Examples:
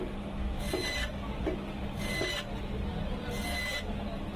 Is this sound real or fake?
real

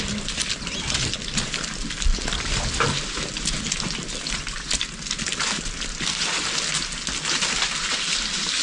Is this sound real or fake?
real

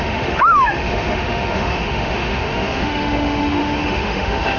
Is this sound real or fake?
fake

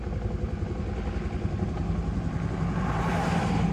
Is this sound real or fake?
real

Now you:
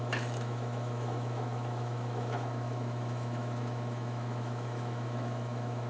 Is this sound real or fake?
fake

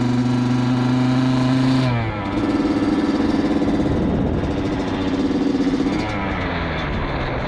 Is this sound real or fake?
real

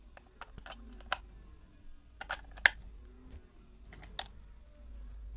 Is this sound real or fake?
real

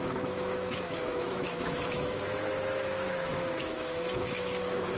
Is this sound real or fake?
fake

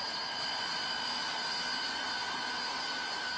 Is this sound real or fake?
real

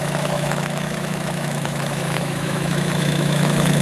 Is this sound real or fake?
fake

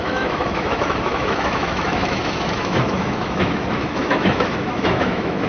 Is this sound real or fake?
fake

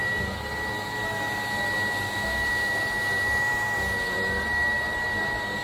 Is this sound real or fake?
real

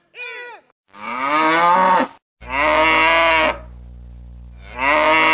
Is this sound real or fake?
real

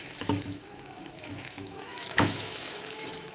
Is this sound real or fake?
fake